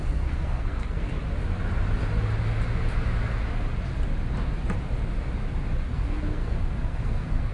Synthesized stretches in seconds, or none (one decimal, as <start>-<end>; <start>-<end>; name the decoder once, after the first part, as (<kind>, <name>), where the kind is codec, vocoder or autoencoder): 0.0-1.2 (codec, SNAC); 5.7-7.5

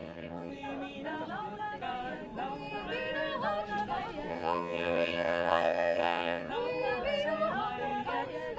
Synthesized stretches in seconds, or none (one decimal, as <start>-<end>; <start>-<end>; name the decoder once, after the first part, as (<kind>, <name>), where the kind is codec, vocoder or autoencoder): 0.0-0.5 (vocoder, HiFi-GAN); 4.3-6.5

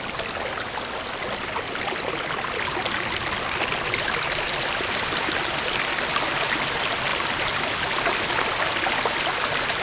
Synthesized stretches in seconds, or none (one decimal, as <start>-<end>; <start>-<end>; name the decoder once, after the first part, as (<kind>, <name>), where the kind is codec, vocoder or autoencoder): none

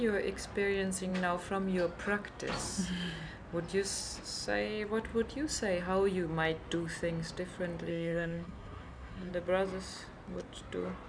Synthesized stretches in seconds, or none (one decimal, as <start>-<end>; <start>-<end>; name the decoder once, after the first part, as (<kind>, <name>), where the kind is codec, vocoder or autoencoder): 7.9-9.3 (codec, SNAC)

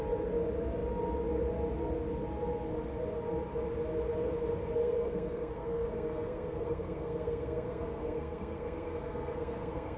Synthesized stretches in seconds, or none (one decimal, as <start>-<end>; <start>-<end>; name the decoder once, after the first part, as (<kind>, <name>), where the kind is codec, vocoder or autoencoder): 4.8-10.0 (codec, SNAC)